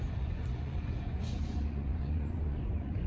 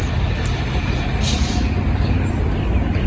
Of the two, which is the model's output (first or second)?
first